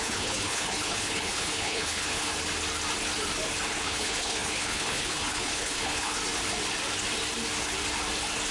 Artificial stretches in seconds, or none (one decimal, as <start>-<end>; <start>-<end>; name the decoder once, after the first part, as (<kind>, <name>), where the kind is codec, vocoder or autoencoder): 0.0-2.3 (codec, HILCodec); 3.8-6.2